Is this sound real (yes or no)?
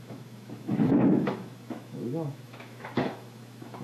no